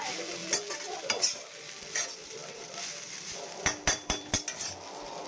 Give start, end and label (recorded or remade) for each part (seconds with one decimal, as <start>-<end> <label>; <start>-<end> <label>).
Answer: 0.0-2.4 recorded; 2.4-3.2 remade; 3.2-3.9 recorded; 3.9-4.6 remade; 4.6-5.3 recorded